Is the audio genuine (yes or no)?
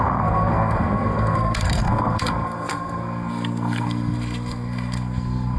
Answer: no